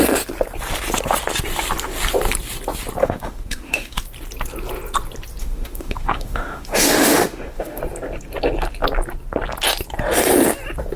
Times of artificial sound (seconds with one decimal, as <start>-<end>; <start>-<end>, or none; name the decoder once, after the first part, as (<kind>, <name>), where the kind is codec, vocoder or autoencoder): 3.0-4.0 (autoencoder, DAC-VAE); 5.4-7.8